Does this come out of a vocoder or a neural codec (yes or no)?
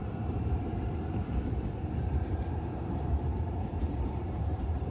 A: yes